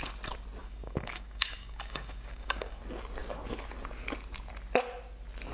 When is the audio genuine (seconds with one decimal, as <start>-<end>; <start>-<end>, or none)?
0.0-0.6; 2.8-5.5